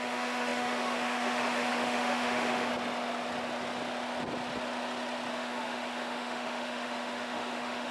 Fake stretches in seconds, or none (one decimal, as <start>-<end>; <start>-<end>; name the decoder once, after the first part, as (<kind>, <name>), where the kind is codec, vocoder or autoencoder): 0.0-2.7 (autoencoder, DAC-VAE); 5.3-7.9